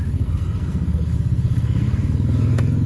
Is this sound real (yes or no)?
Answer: no